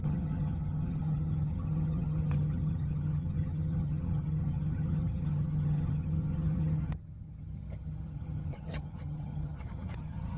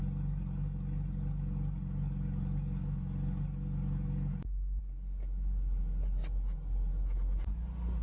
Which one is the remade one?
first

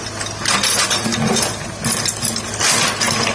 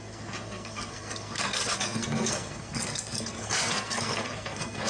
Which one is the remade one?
second